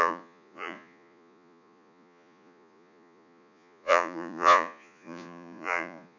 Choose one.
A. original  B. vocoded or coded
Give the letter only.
B